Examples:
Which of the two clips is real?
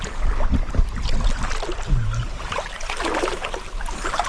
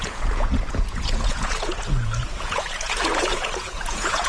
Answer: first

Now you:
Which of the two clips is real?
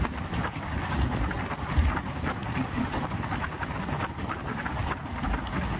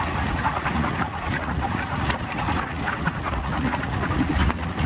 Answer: first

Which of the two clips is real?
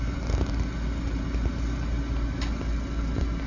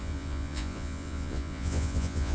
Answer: first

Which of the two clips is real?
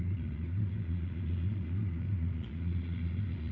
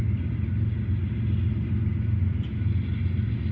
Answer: second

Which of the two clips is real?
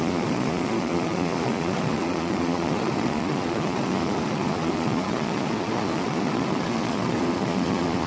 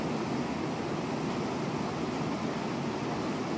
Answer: second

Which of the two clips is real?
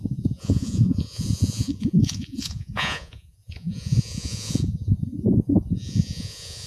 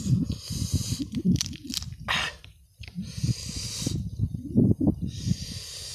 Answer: second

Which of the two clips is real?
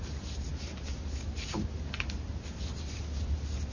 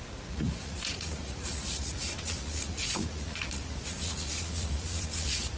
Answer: first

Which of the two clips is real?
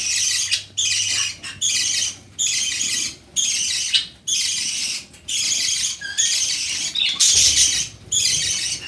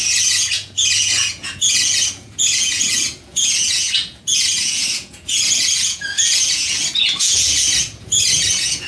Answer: first